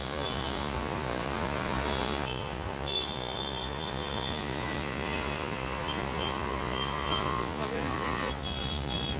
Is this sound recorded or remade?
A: remade